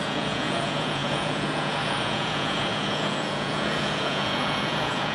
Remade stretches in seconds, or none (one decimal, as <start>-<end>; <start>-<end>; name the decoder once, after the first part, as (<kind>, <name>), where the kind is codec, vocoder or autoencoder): 0.0-5.1 (vocoder, Vocos)